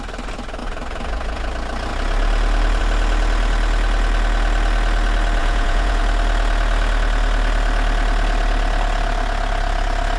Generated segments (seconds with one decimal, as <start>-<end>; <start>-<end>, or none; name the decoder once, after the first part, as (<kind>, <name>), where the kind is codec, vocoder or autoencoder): 0.6-1.5 (vocoder, Vocos); 5.4-6.0